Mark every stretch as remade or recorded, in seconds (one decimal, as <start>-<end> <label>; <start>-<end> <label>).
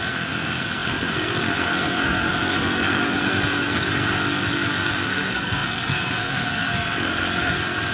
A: 0.0-7.9 remade